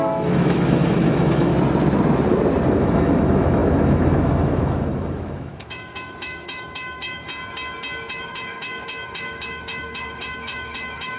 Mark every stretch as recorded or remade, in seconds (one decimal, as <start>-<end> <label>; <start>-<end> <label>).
0.0-1.5 remade; 1.5-2.7 recorded; 2.7-7.3 remade; 7.3-8.1 recorded; 8.1-11.2 remade